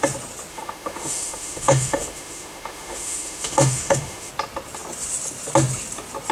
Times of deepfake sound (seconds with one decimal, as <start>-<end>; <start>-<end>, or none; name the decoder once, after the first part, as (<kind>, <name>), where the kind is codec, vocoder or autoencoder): 0.5-4.3 (autoencoder, DAC-VAE)